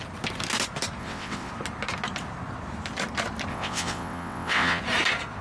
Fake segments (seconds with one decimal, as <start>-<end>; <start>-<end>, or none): 1.0-1.5; 3.5-4.8

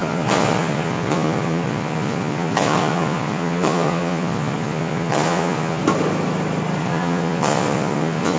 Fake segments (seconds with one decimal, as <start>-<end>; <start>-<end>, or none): 0.0-5.8; 6.8-8.4

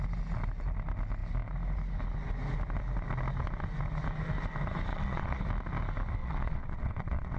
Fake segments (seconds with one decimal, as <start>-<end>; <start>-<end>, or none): 4.9-5.4; 6.2-7.4